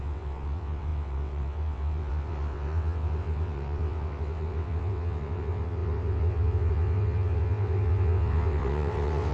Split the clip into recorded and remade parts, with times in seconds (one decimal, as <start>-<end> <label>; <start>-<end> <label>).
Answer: 0.0-9.3 remade